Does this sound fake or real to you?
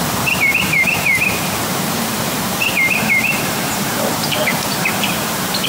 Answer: fake